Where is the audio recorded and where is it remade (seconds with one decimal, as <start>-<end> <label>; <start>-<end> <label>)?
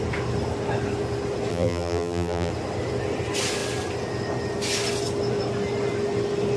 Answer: 0.0-1.5 recorded; 1.5-2.5 remade; 2.5-6.6 recorded